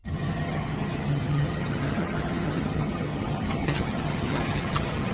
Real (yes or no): no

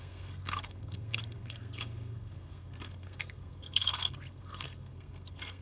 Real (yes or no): no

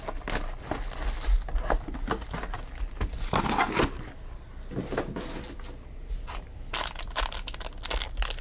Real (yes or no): yes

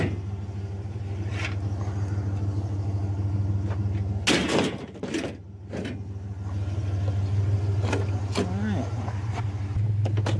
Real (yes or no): yes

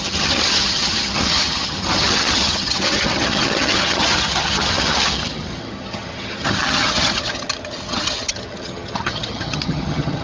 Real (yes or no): no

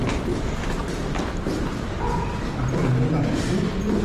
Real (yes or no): yes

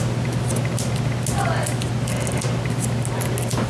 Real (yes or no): yes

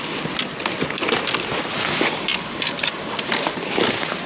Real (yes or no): yes